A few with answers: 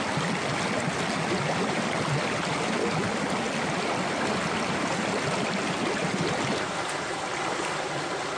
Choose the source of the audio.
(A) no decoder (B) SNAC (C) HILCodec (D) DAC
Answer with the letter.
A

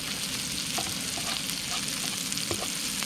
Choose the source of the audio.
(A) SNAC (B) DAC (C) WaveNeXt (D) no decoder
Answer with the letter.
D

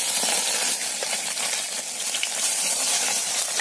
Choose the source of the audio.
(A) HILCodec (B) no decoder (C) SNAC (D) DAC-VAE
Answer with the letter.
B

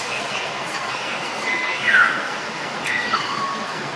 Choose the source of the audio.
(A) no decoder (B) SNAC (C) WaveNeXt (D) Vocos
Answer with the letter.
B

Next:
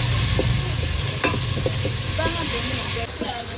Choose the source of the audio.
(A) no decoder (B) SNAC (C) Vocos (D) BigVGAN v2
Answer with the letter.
A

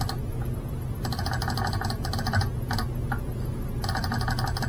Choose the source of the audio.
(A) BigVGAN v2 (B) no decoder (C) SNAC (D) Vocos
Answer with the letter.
B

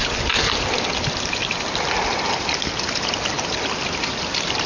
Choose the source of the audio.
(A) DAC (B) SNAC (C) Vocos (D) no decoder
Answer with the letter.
D